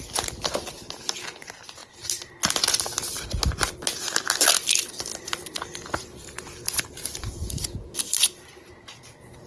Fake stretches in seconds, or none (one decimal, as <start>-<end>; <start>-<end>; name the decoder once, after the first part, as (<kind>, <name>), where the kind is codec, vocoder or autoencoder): 5.1-8.2 (vocoder, BigVGAN v2)